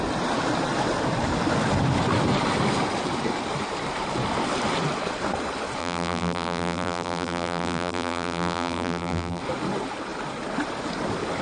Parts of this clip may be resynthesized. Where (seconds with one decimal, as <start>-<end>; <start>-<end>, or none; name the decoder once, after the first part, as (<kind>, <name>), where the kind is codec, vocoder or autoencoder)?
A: 5.8-9.4 (vocoder, BigVGAN v2)